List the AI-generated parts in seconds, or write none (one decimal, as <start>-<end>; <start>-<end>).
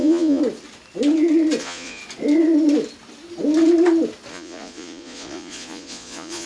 0.0-0.4; 1.6-2.0; 4.3-6.5